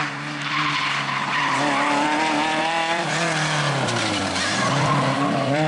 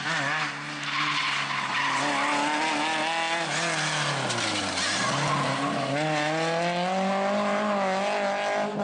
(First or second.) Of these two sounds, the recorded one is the second